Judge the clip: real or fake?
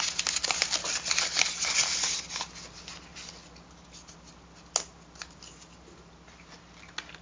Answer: real